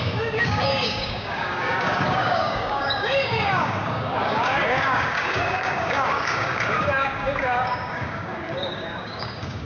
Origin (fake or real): fake